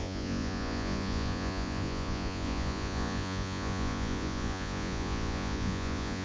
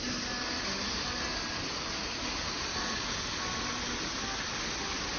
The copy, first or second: first